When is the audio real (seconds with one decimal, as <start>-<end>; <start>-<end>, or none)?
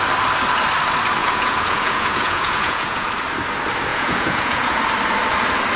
0.0-1.2; 3.1-3.9; 4.8-5.8